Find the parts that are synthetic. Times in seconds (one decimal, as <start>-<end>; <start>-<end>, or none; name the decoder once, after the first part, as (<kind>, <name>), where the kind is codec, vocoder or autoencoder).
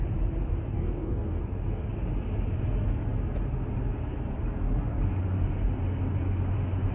0.7-1.4 (codec, DAC)